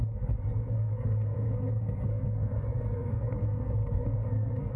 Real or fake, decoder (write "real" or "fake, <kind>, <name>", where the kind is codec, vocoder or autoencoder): fake, codec, SNAC